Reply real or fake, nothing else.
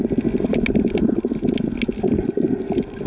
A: real